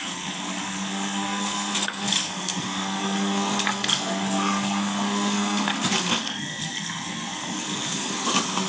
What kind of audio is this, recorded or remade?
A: remade